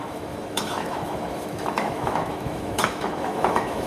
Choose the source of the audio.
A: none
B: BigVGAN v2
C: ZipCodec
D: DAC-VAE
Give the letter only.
D